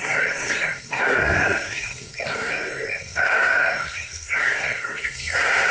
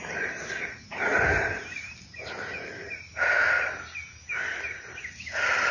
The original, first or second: second